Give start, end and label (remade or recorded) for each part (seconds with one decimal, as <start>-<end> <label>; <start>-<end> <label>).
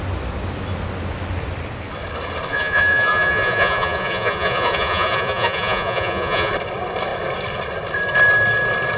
0.0-2.5 recorded; 2.5-6.5 remade; 6.5-9.0 recorded